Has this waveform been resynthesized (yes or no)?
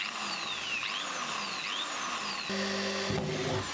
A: no